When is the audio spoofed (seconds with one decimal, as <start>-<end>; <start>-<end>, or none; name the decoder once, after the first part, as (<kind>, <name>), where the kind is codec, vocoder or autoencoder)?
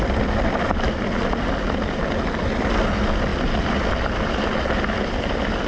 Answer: none